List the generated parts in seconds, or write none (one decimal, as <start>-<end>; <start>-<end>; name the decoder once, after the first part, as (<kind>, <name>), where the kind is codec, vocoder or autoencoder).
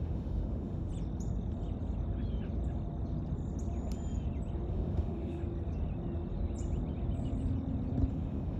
0.0-0.9 (autoencoder, DAC-VAE); 4.7-5.4; 8.1-8.6